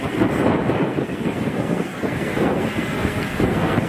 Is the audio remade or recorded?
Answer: remade